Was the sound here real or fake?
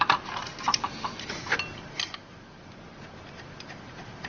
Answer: real